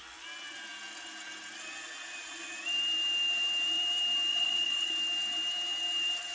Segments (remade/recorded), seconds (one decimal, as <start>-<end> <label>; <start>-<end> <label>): 0.0-4.3 recorded; 4.3-4.9 remade; 4.9-6.3 recorded